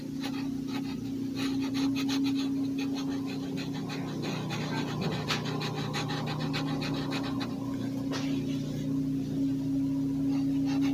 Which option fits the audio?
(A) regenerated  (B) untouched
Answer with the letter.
B